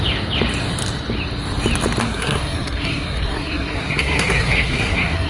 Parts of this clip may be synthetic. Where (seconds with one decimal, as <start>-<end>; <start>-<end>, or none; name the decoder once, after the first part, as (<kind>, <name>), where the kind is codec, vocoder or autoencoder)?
2.0-5.3 (codec, SNAC)